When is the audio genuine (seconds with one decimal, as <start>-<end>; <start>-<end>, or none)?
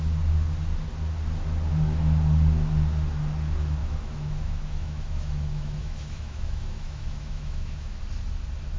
0.0-3.8; 8.0-8.8